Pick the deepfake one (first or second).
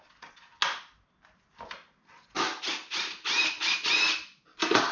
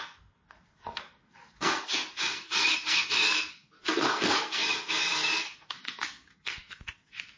second